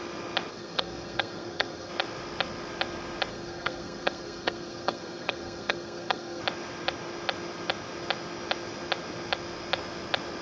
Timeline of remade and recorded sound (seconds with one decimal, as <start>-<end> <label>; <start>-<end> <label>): 0.0-0.5 recorded; 0.5-1.9 remade; 1.9-3.3 recorded; 3.3-6.4 remade; 6.4-10.4 recorded